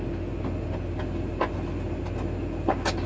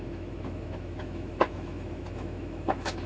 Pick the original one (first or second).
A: first